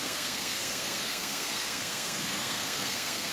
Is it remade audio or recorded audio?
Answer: remade